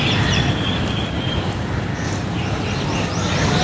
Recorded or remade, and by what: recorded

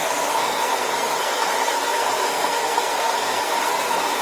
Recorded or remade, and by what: remade, codec, SNAC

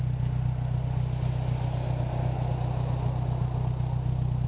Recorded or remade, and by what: recorded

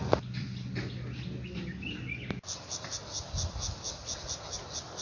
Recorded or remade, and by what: recorded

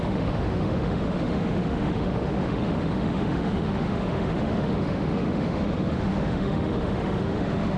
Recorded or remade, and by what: remade, autoencoder, DAC-VAE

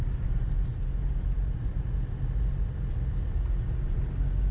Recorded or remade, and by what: recorded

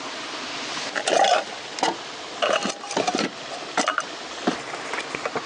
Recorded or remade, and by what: recorded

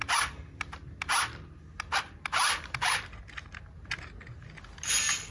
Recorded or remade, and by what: recorded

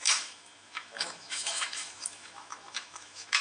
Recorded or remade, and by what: remade, autoencoder, DAC-VAE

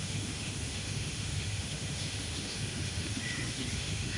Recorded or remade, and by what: remade, autoencoder, DAC-VAE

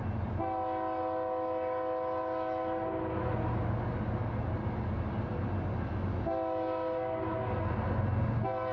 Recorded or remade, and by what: recorded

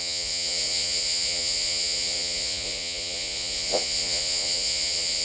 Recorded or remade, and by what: remade, vocoder, Vocos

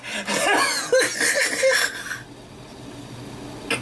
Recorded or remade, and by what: recorded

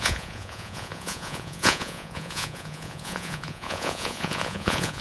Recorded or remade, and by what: remade, vocoder, Vocos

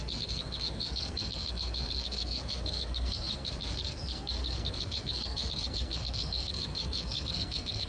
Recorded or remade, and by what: remade, codec, SNAC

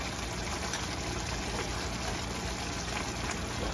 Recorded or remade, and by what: recorded